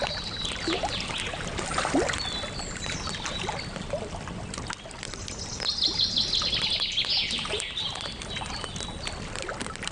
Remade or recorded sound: recorded